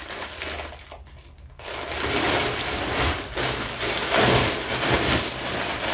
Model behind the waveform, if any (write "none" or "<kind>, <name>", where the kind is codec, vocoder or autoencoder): none